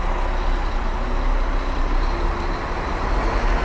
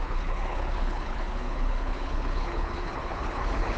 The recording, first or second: first